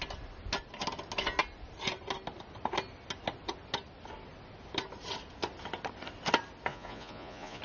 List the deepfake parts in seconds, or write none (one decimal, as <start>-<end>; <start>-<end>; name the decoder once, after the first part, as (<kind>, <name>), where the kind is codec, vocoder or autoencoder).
6.7-7.6 (vocoder, Vocos)